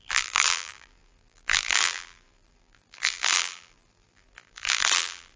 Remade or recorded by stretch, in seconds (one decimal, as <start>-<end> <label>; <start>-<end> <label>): 0.0-5.4 remade